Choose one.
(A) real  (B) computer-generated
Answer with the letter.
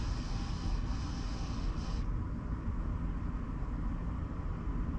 A